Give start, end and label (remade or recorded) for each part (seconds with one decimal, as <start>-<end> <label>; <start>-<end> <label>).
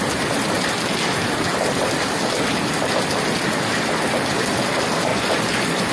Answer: 0.0-5.1 recorded; 5.1-5.9 remade